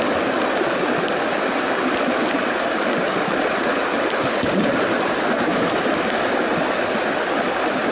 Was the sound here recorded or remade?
recorded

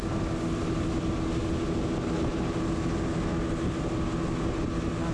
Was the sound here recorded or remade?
recorded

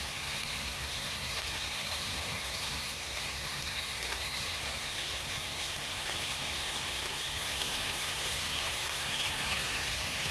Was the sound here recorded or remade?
remade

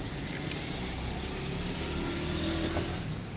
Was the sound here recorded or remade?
recorded